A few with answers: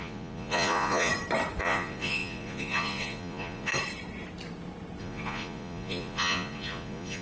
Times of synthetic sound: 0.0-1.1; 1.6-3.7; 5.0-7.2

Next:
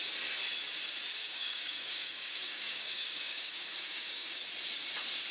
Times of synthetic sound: 1.2-4.4

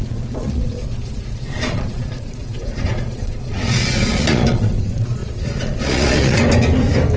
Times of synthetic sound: 0.0-6.4

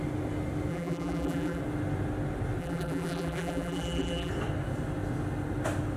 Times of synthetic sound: 0.7-1.6; 2.6-4.3

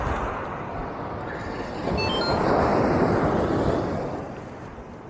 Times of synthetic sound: 2.7-4.3

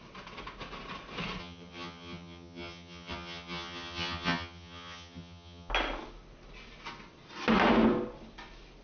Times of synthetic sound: 1.4-5.7

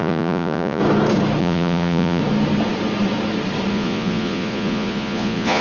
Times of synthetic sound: 0.0-0.8; 1.4-2.2; 3.7-5.6

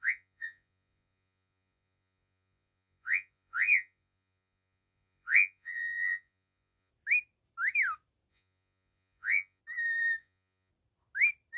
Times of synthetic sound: 0.0-6.9; 8.3-9.6; 10.2-10.7